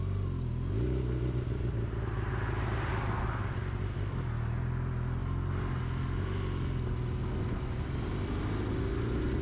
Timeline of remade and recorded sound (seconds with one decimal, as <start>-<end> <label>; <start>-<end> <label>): 0.0-9.4 recorded